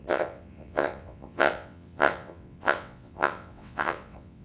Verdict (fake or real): fake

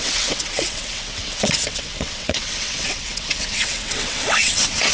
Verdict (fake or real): fake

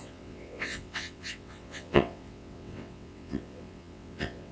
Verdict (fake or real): fake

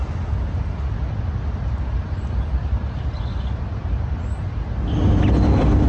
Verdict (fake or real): real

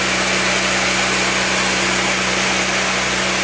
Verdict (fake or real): real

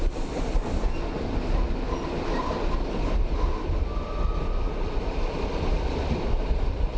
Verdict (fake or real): real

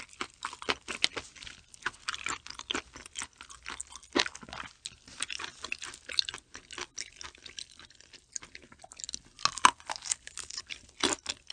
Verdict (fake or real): real